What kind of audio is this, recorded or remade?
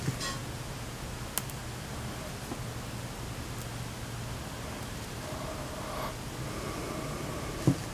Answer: recorded